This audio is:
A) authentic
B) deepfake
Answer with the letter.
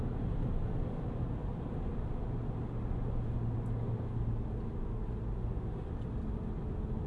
A